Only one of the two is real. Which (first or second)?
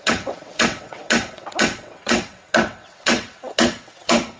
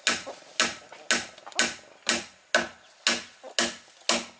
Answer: second